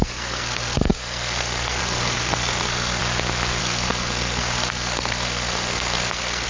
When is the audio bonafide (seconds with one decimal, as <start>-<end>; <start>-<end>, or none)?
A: 3.0-3.6

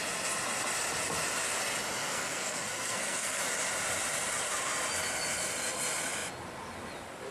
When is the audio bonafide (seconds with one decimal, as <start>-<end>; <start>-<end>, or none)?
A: 0.0-2.0; 3.4-7.3

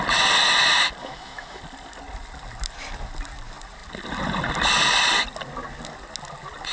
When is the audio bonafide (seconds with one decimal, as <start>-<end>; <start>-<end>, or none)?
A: 0.0-1.0; 1.6-6.7

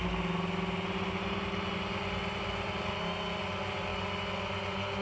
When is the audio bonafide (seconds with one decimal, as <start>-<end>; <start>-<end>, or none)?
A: 0.0-5.0

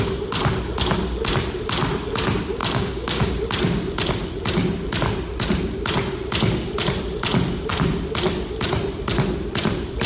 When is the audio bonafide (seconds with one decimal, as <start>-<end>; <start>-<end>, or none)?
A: 0.0-2.6; 3.3-10.1

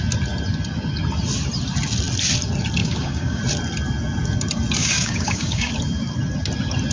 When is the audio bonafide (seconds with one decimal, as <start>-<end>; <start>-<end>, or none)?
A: 0.0-2.8; 3.4-4.8; 5.7-6.9

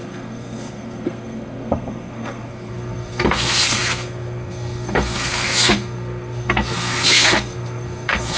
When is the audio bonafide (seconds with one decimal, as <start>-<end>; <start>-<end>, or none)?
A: none